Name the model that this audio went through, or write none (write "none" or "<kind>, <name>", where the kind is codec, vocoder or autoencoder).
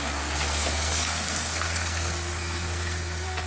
codec, SNAC